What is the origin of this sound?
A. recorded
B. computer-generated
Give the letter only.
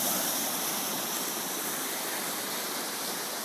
B